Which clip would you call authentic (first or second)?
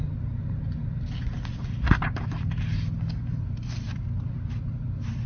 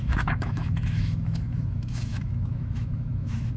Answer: first